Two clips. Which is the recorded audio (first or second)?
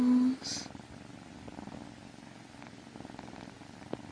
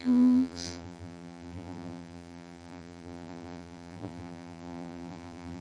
first